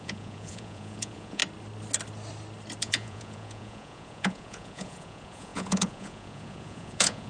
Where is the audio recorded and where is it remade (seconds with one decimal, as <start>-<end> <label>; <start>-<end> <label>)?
0.0-1.4 remade; 1.4-2.8 recorded; 2.8-7.3 remade